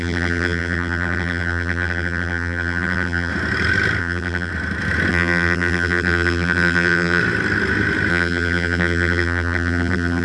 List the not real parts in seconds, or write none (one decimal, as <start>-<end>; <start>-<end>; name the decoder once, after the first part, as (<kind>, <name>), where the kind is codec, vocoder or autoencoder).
0.0-3.3 (vocoder, BigVGAN v2); 4.0-4.5; 5.1-7.2; 8.1-10.2

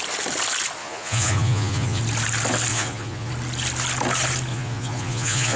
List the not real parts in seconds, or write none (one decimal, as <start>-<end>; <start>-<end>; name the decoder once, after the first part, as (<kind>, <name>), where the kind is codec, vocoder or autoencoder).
0.8-2.0 (vocoder, Vocos); 2.7-3.3; 4.5-5.6

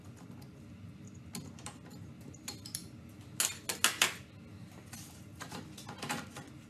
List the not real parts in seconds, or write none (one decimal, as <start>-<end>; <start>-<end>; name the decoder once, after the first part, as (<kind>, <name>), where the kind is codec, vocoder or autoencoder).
none

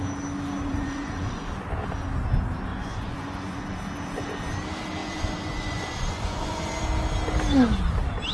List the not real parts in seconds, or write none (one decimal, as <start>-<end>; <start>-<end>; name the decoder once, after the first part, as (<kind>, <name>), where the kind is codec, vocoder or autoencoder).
0.7-1.4 (vocoder, Vocos); 2.7-3.8; 5.0-6.8

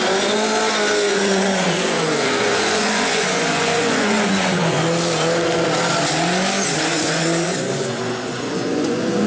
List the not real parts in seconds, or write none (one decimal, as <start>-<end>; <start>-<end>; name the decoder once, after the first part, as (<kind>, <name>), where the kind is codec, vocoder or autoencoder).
1.1-4.8 (vocoder, Vocos); 6.9-9.3